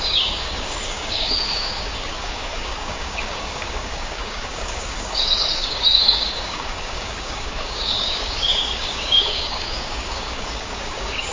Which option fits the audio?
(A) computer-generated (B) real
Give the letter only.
A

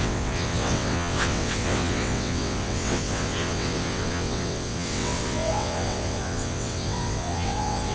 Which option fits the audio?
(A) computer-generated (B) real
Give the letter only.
A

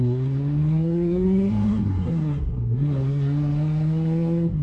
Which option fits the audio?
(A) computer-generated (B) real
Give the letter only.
A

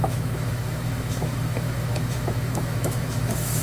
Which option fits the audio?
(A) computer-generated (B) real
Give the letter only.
A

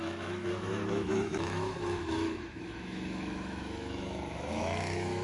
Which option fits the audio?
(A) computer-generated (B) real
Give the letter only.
A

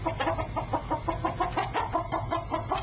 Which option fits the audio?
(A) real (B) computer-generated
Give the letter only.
A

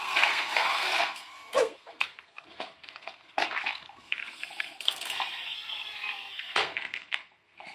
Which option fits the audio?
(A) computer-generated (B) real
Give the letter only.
A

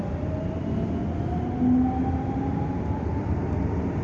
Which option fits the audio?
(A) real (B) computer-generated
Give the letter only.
A